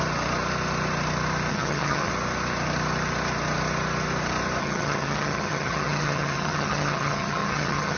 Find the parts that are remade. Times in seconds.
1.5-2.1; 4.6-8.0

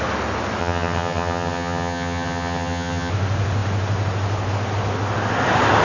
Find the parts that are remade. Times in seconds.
0.6-3.1

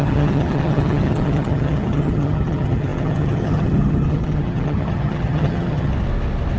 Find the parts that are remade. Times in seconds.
0.0-5.9

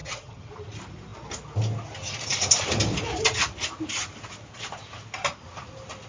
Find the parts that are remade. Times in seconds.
0.0-0.5

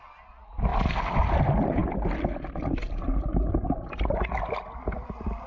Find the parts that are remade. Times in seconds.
none

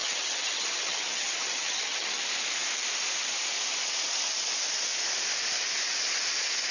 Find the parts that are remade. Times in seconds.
0.0-2.2

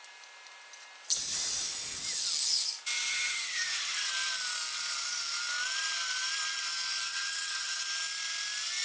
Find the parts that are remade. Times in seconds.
3.1-4.1; 7.1-7.8